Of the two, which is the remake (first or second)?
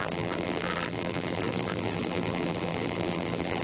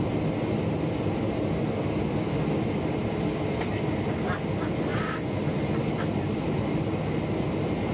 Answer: first